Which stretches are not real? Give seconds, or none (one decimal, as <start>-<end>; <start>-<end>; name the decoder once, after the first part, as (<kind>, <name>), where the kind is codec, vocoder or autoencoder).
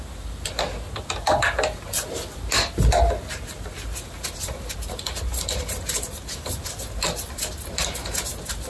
none